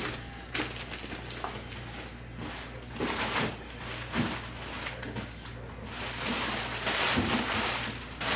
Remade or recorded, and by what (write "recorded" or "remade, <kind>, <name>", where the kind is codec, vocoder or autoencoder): recorded